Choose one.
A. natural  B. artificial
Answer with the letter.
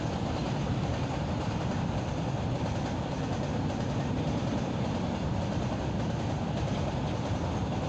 A